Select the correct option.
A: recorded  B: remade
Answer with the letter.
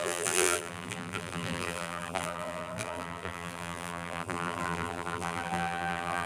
B